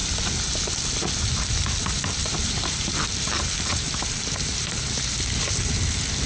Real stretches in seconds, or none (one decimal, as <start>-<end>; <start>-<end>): 0.0-2.2; 5.0-6.3